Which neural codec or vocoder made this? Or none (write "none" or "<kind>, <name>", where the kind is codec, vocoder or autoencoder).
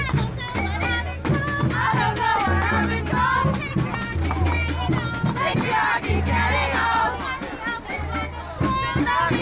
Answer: none